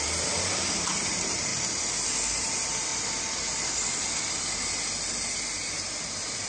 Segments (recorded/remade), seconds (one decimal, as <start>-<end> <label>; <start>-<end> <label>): 0.0-1.5 remade; 1.5-2.3 recorded; 2.3-2.9 remade; 2.9-4.4 recorded; 4.4-6.5 remade